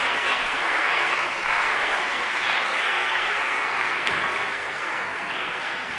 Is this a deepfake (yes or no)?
yes